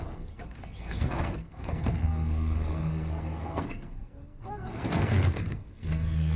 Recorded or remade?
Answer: remade